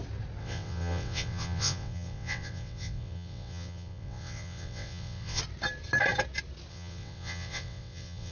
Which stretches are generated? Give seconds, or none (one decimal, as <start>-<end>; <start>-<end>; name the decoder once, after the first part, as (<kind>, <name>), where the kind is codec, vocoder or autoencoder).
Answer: 0.4-5.4 (vocoder, WaveNeXt); 6.7-8.3